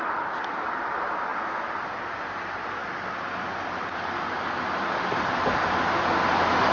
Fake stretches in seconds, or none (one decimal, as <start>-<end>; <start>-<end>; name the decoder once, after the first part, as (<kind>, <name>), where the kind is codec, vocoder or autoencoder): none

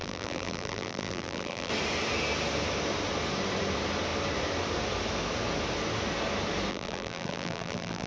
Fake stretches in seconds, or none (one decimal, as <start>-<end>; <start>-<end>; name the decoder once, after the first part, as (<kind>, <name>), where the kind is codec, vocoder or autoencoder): 0.0-1.7 (vocoder, BigVGAN v2); 6.7-8.1

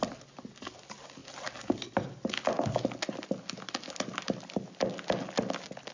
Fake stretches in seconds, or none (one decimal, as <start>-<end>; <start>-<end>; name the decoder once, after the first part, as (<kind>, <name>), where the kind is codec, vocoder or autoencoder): none

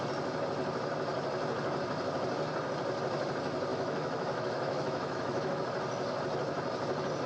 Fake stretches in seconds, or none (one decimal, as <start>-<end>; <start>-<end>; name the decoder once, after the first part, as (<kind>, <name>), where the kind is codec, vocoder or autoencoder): 3.7-5.6 (autoencoder, DAC-VAE)

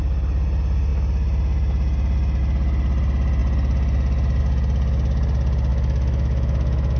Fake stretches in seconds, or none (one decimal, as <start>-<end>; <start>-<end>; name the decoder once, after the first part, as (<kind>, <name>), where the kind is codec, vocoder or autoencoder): 5.7-7.0 (autoencoder, DAC-VAE)

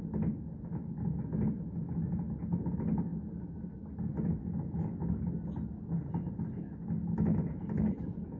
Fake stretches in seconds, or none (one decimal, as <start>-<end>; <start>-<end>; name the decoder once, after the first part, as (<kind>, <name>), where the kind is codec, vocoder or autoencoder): none

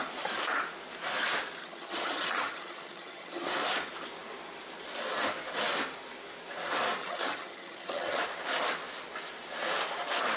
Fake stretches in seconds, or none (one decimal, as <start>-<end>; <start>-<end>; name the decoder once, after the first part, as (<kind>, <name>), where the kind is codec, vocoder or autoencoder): 1.6-3.5 (vocoder, HiFi-GAN); 7.0-8.2